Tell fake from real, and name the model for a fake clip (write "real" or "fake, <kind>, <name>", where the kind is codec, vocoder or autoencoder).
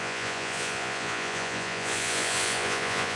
fake, vocoder, Vocos